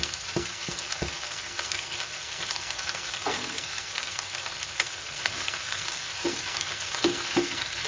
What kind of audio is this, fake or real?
fake